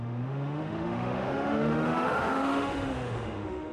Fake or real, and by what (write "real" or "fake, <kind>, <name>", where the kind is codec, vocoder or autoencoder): fake, autoencoder, DAC-VAE